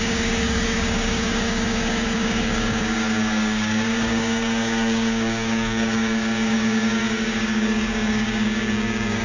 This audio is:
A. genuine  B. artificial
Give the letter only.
B